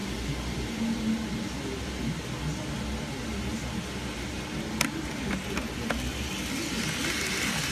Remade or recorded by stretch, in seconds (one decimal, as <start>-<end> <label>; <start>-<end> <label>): 0.0-7.7 recorded